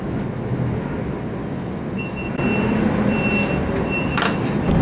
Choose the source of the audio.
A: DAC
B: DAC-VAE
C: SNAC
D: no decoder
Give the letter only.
D